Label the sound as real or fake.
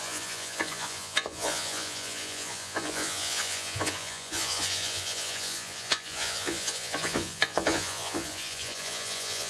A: fake